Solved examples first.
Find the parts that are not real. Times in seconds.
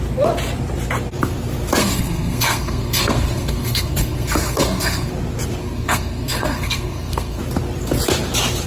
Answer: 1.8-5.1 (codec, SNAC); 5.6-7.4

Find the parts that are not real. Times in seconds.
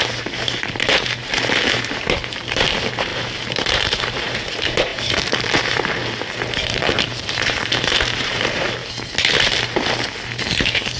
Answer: 0.0-8.8 (vocoder, BigVGAN v2); 10.4-11.0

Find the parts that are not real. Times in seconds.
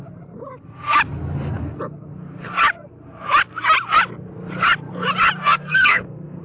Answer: 5.4-6.4 (codec, SNAC)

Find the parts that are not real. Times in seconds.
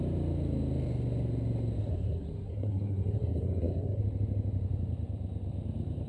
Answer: 1.8-4.0 (codec, SNAC)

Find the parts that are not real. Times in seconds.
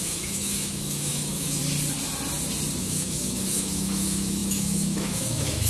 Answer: 0.0-1.6 (autoencoder, DAC-VAE); 2.8-5.7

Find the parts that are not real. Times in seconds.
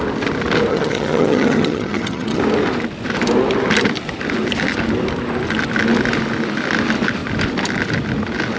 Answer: 0.7-2.4 (vocoder, HiFi-GAN)